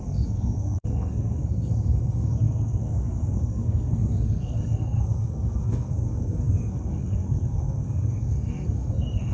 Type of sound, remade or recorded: remade